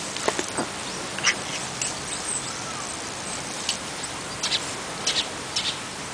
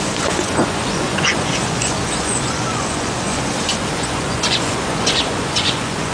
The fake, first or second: second